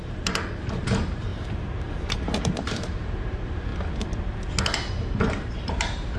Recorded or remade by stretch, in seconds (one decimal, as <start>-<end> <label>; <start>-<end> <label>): 0.0-1.3 remade; 1.3-2.0 recorded; 2.0-3.7 remade; 3.7-4.9 recorded; 4.9-6.2 remade